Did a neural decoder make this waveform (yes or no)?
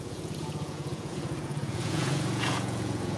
yes